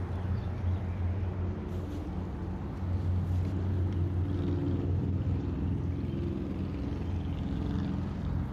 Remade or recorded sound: recorded